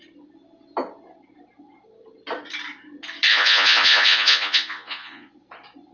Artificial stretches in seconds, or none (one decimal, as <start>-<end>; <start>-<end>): 3.3-5.3